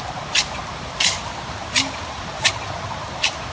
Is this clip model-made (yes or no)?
no